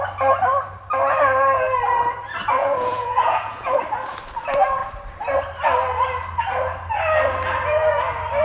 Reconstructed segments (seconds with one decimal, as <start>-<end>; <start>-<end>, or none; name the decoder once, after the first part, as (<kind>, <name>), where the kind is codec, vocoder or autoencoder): 2.6-3.8 (vocoder, Vocos)